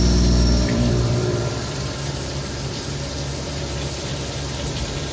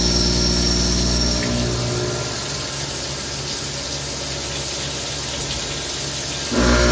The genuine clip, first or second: second